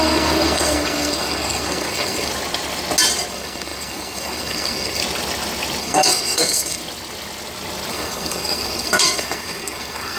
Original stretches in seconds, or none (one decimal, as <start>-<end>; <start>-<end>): 2.3-3.3; 5.0-5.8; 6.8-7.9